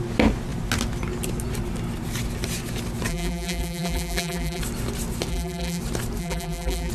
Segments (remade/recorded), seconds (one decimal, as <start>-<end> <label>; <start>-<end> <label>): 0.0-3.1 recorded; 3.1-4.6 remade; 4.6-5.3 recorded; 5.3-5.8 remade; 5.8-6.2 recorded; 6.2-6.9 remade